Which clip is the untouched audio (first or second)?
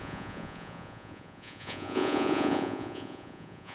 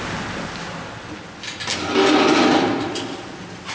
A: second